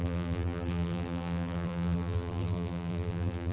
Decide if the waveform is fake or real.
fake